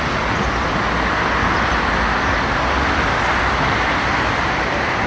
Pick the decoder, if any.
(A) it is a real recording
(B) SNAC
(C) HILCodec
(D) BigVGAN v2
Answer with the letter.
A